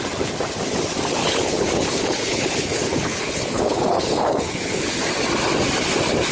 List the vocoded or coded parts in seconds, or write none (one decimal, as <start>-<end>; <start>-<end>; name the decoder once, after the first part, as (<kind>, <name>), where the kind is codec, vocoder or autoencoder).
1.2-5.0 (codec, HILCodec)